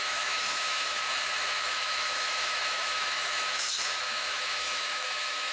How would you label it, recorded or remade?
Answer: remade